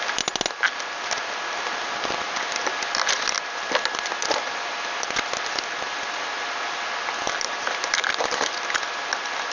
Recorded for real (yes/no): yes